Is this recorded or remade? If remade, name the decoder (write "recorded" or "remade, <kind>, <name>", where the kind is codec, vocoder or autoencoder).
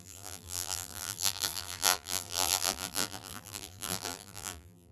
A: remade, vocoder, BigVGAN v2